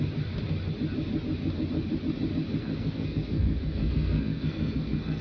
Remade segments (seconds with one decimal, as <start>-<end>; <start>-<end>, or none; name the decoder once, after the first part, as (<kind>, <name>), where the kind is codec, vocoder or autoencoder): 2.6-5.2 (codec, SNAC)